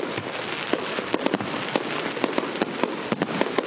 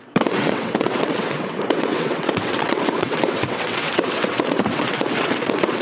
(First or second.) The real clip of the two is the first